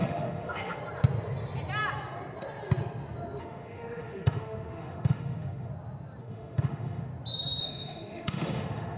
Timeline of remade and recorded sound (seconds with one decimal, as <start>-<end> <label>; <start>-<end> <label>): 0.0-0.8 remade; 0.8-3.4 recorded; 3.4-5.7 remade; 5.7-6.2 recorded; 6.2-7.1 remade; 7.1-7.6 recorded; 7.6-9.0 remade